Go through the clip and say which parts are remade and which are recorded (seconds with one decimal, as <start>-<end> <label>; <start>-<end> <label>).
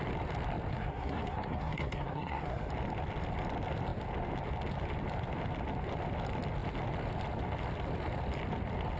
0.0-0.7 recorded; 0.7-2.7 remade; 2.7-9.0 recorded